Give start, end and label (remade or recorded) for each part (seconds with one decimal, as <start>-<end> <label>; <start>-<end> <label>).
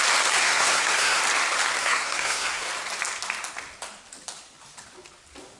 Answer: 0.0-0.4 recorded; 0.4-1.2 remade; 1.2-1.8 recorded; 1.8-2.7 remade; 2.7-5.6 recorded